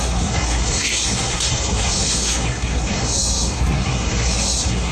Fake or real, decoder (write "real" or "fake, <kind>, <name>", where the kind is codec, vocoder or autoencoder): fake, codec, SNAC